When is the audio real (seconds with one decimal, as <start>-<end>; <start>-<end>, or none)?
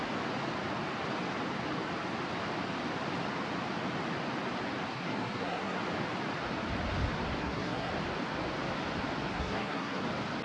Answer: 0.0-4.9; 5.8-7.4; 7.9-9.3; 10.0-10.4